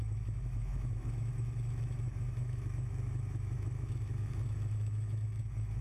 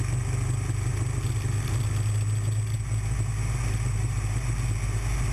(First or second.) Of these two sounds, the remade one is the first